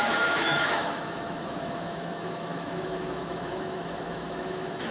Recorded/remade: remade